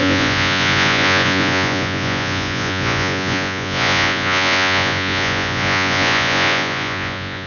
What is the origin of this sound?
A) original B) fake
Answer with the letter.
B